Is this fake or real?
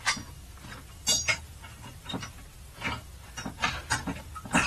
fake